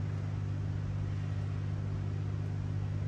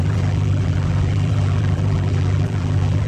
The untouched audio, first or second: first